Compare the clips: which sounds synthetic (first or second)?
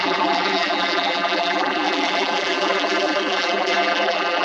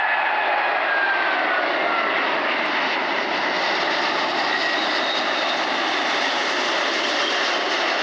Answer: first